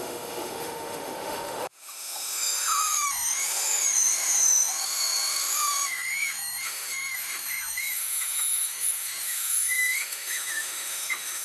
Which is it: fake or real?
fake